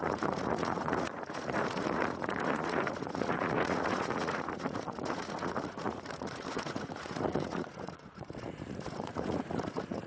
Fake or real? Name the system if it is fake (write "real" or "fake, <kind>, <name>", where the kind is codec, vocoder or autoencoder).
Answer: fake, vocoder, Vocos